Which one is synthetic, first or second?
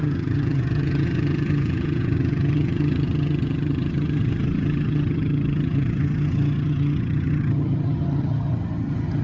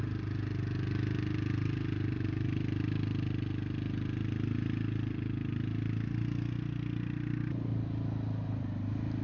first